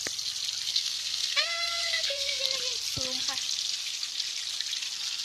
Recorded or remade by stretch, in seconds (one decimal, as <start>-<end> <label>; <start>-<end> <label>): 0.0-0.7 recorded; 0.7-2.4 remade; 2.4-5.2 recorded

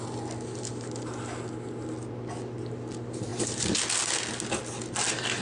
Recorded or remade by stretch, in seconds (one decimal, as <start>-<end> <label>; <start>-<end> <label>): 0.0-5.4 recorded

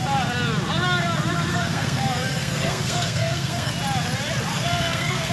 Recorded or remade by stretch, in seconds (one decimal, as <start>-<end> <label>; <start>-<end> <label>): 0.0-1.5 recorded; 1.5-3.7 remade; 3.7-4.5 recorded; 4.5-5.3 remade

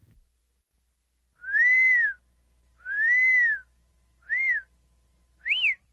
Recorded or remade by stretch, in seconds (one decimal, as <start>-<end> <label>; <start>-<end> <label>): 0.0-5.9 recorded

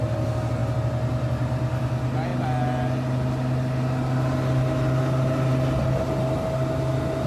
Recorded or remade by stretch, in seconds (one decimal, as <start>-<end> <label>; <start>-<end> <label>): 0.0-7.3 recorded

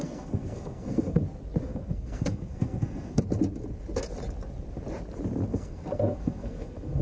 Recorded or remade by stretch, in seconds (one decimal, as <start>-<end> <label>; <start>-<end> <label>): 0.0-1.2 remade; 1.2-1.6 recorded; 1.6-3.2 remade; 3.2-5.5 recorded; 5.5-7.0 remade

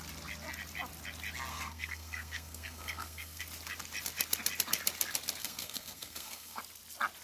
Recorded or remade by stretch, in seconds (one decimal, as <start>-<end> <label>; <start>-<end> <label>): 0.0-1.5 recorded; 1.5-3.4 remade; 3.4-5.4 recorded; 5.4-6.6 remade; 6.6-7.2 recorded

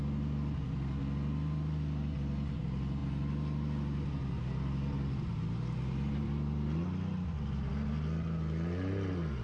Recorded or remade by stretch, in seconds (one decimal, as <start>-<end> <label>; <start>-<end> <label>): 0.0-9.4 recorded